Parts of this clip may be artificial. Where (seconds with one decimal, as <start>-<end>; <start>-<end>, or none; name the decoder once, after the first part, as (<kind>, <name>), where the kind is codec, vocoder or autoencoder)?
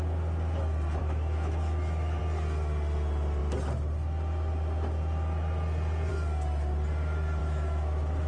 1.0-2.2 (autoencoder, DAC-VAE); 7.4-8.3